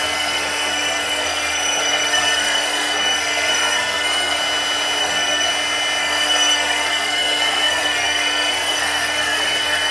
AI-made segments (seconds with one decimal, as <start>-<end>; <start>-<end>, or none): 0.0-4.4; 5.0-5.5; 6.0-9.9